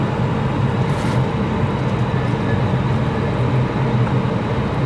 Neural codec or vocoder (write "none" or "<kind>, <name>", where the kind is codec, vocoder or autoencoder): none